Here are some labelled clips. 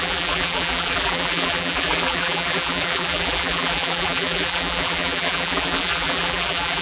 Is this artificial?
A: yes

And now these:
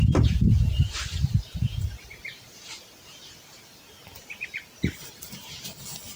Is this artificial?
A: yes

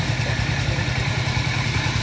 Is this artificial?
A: yes